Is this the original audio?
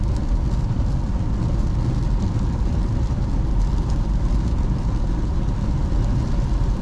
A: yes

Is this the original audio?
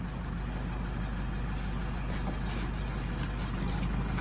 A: yes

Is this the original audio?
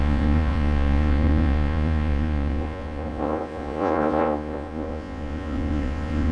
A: no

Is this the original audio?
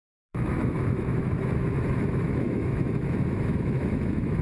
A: no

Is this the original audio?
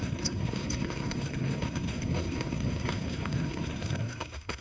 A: no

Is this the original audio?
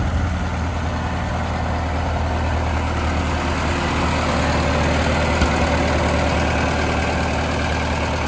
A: yes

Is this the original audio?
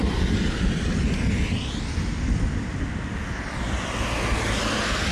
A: yes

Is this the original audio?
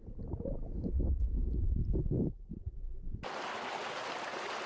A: yes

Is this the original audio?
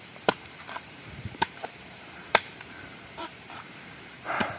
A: no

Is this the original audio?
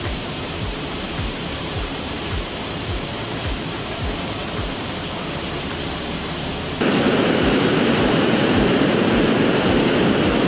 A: no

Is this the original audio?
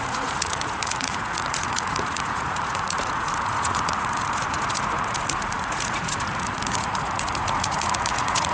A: no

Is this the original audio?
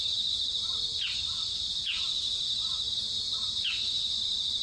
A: yes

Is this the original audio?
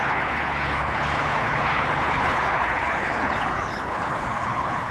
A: no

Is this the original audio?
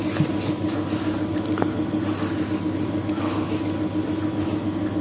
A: yes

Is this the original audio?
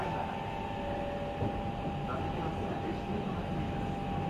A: yes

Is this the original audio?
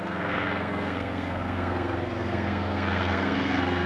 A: no